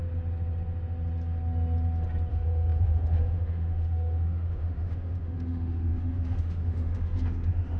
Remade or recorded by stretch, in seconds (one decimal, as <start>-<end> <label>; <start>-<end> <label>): 0.0-2.3 recorded; 2.3-7.8 remade